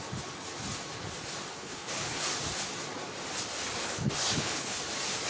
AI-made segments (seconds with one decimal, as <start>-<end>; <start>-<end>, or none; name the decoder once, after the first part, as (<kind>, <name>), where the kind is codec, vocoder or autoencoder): 1.5-2.2 (codec, HILCodec); 3.8-4.8